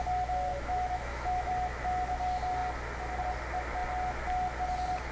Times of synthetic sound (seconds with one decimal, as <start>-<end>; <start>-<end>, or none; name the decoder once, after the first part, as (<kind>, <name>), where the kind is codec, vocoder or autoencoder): 0.5-1.5 (autoencoder, DAC-VAE)